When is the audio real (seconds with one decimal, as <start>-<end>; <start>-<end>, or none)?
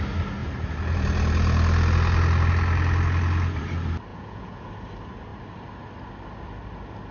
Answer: 0.0-4.1; 4.7-7.1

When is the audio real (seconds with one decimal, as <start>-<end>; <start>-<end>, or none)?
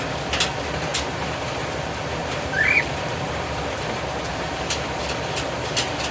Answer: 0.0-0.9; 1.8-2.2; 3.0-4.3; 5.0-6.1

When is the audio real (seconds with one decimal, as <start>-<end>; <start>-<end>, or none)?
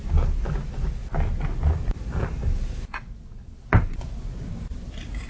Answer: 0.0-5.3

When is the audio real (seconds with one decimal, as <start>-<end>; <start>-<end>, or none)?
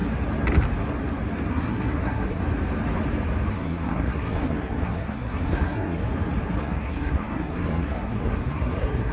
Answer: 0.0-1.5; 2.4-3.5; 6.0-6.6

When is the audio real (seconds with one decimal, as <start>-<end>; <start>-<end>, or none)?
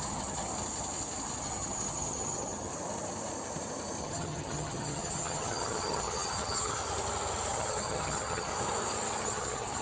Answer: 0.5-1.4; 2.7-4.0; 6.8-7.5; 8.5-9.2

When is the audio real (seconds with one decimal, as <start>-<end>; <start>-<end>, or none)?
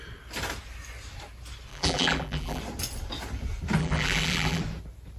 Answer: 0.0-1.7; 2.6-3.8; 4.6-5.2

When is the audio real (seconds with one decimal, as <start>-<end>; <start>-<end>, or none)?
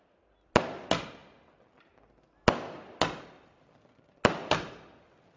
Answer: 0.0-5.4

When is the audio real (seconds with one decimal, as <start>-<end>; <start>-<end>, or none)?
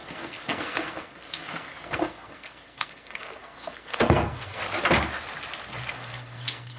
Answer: 4.6-5.9